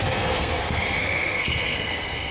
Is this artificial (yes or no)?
yes